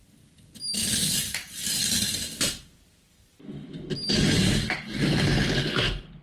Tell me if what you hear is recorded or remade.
recorded